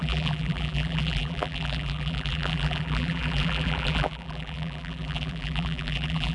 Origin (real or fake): fake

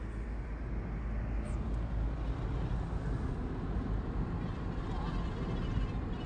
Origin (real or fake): real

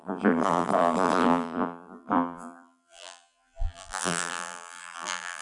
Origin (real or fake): fake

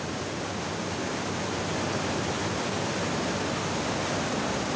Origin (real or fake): real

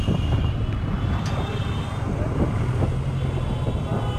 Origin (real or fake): real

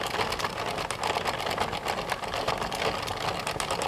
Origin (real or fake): real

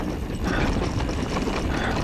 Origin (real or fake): real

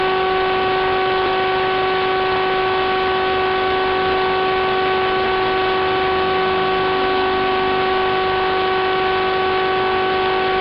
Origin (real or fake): real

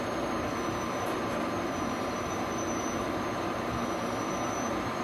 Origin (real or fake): fake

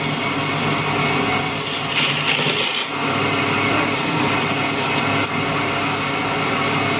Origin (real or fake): real